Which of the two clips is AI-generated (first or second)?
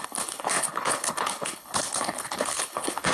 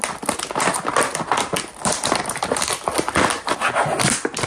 first